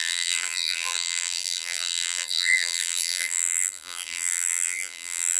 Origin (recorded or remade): remade